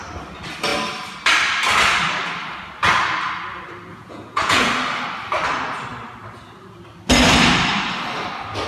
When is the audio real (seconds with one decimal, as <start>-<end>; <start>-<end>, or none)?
0.0-3.9; 4.7-8.7